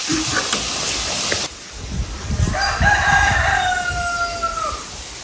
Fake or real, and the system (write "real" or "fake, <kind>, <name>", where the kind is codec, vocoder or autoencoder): real